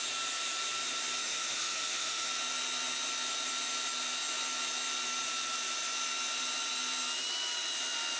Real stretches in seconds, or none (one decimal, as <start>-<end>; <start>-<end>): 0.0-1.2; 2.3-8.2